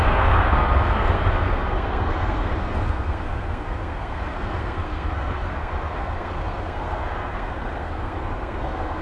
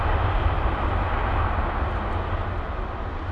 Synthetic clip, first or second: first